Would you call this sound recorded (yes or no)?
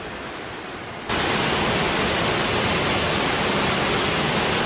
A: yes